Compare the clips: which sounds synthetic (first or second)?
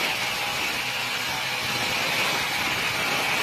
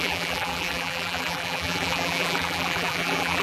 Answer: second